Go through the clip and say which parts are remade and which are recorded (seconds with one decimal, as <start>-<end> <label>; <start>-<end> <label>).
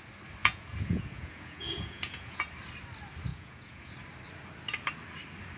0.0-0.4 recorded; 0.4-2.5 remade; 2.5-3.3 recorded; 3.3-3.9 remade; 3.9-5.6 recorded